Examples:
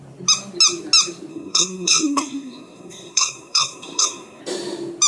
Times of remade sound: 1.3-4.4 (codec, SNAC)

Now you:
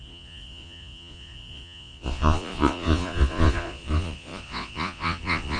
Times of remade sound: 0.0-5.6 (vocoder, Vocos)

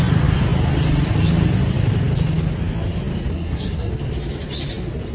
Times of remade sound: 3.3-3.9 (codec, SNAC)

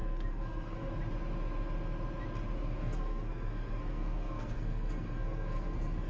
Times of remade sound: 0.0-0.9 (codec, SNAC); 2.8-6.1

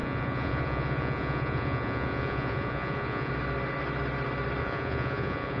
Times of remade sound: 0.0-3.3 (vocoder, Vocos); 4.6-5.6

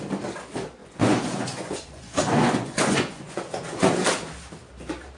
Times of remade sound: 0.8-3.9 (vocoder, Vocos)

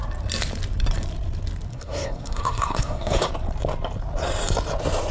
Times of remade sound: 1.7-3.3 (codec, SNAC)